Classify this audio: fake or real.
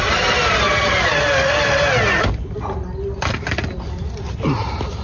real